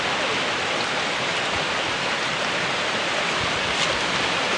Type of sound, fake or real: real